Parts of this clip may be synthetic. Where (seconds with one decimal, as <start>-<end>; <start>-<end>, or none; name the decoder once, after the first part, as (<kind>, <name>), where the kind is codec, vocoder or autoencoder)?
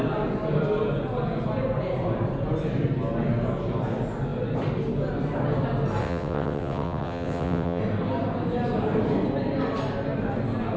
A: 6.0-7.8 (vocoder, WaveNeXt)